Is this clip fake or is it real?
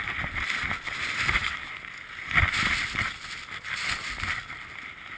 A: real